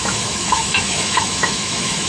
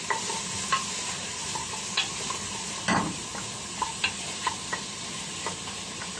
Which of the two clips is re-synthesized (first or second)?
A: first